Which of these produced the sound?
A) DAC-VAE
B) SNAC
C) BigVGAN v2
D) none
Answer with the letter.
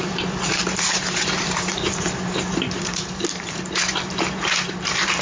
C